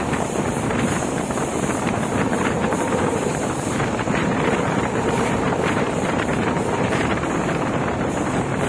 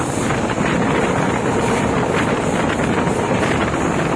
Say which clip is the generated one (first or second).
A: first